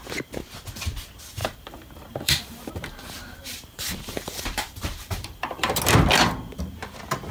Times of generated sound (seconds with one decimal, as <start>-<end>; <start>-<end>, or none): 1.4-5.8